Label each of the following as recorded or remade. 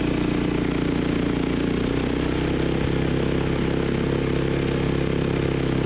recorded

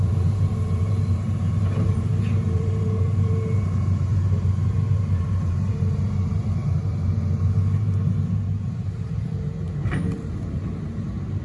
remade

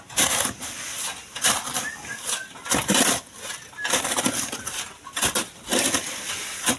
recorded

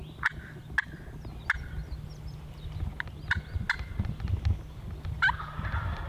recorded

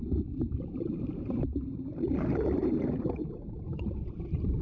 remade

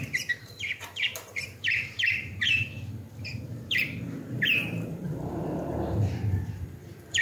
remade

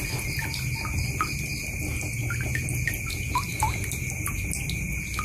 recorded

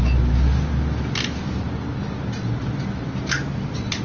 recorded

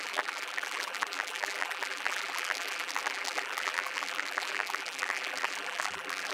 remade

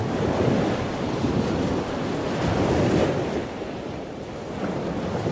recorded